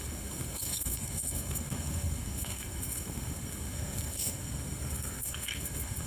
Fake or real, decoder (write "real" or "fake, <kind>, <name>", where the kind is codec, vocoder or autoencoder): fake, codec, SNAC